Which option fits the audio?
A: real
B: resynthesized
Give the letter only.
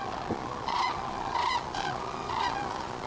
B